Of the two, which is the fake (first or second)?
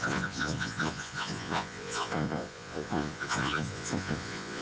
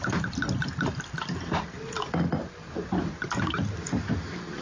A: first